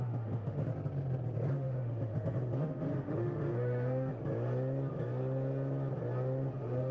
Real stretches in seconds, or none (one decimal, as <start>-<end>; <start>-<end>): 0.7-1.5; 4.1-6.5